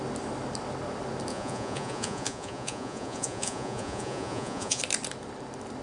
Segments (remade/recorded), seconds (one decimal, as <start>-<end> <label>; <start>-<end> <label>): 0.0-1.3 recorded; 1.3-4.8 remade; 4.8-5.8 recorded